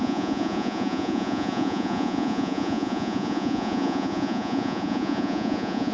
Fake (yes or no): yes